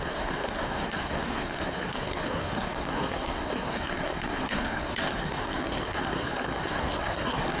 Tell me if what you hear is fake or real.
fake